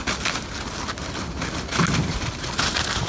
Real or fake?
real